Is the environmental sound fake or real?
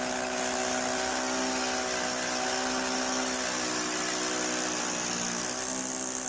real